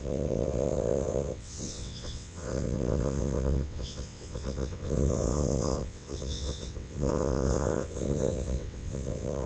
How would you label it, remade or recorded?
remade